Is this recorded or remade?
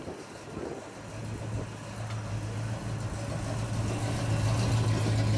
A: recorded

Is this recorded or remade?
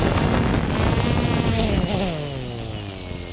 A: recorded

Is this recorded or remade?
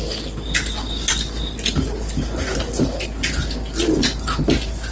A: recorded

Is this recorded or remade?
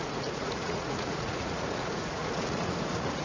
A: remade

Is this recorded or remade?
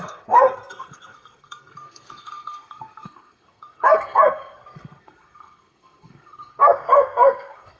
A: remade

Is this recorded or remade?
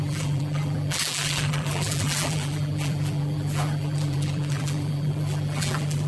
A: remade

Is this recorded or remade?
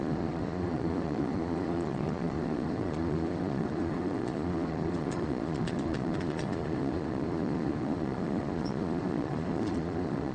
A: remade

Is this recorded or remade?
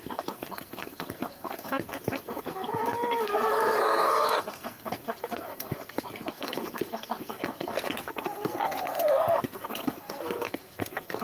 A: remade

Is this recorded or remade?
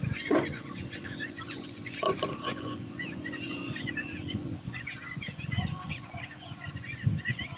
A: remade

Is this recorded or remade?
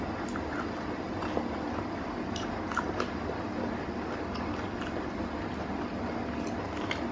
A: recorded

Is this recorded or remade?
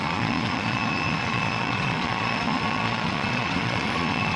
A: remade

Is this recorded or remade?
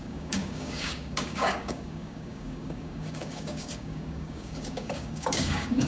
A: remade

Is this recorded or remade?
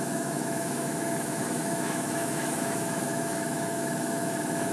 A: remade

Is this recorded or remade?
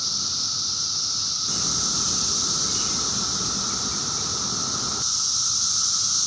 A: recorded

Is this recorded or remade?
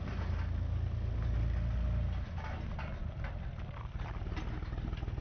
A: recorded